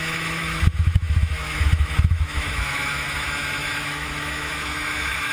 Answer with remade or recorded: remade